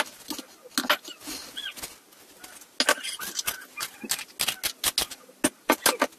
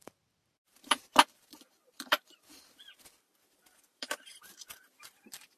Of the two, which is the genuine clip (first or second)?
first